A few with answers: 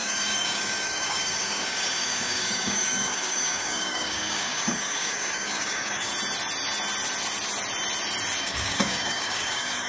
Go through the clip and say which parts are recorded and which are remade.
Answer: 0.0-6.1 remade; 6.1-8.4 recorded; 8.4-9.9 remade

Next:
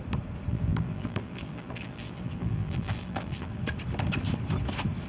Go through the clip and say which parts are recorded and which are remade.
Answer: 0.0-0.5 recorded; 0.5-3.6 remade; 3.6-5.1 recorded

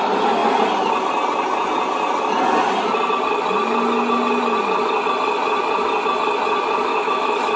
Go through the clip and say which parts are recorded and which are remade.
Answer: 0.0-6.9 recorded; 6.9-7.6 remade

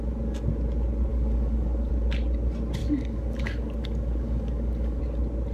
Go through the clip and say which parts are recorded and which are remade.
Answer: 0.0-1.1 recorded; 1.1-1.9 remade; 1.9-2.8 recorded; 2.8-5.0 remade; 5.0-5.5 recorded